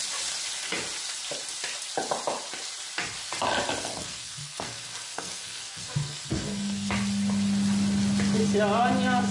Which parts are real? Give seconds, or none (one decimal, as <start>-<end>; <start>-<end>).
0.0-3.8; 6.9-9.3